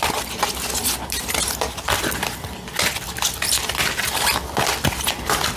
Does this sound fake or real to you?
real